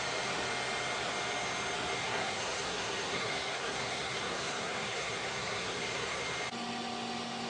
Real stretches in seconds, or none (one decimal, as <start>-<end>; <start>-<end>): 0.0-2.0; 6.2-7.5

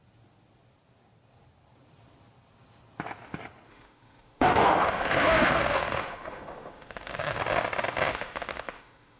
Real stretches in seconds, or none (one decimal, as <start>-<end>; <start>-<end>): 0.0-3.7; 7.4-8.1